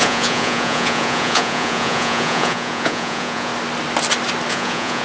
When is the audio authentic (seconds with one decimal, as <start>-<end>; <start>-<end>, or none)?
3.5-4.5